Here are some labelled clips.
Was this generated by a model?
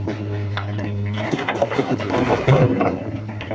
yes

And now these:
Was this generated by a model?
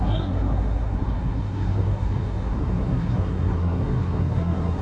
yes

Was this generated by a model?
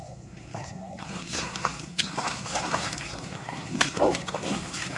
yes